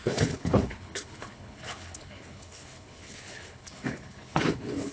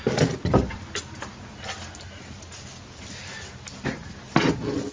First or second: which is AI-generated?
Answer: first